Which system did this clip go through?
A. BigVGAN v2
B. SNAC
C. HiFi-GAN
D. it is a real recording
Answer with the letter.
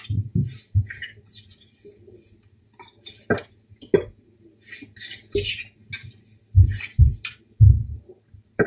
D